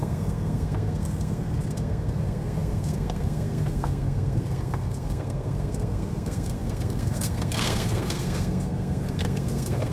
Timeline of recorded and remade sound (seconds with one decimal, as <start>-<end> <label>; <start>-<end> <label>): 0.0-9.9 remade